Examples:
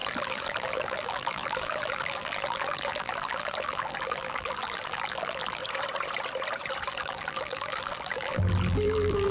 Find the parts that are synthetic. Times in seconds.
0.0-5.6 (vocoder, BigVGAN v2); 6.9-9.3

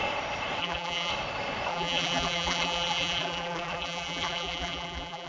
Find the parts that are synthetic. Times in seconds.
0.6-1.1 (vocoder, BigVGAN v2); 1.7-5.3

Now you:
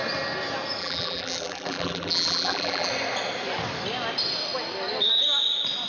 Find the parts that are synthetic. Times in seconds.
0.8-2.9 (vocoder, BigVGAN v2)

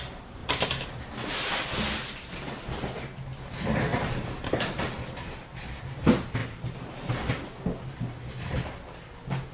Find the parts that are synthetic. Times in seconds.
0.4-1.5 (vocoder, BigVGAN v2); 3.9-5.8; 6.4-7.1